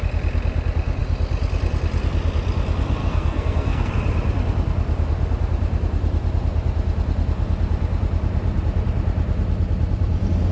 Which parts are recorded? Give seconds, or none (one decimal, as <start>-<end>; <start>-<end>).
0.0-3.0; 3.9-10.5